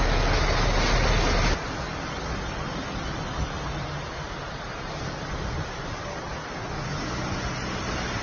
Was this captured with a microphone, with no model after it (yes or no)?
yes